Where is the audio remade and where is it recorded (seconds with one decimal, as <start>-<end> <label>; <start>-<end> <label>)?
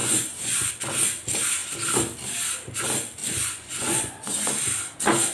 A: 0.0-0.7 remade; 0.7-3.2 recorded; 3.2-4.5 remade; 4.5-5.3 recorded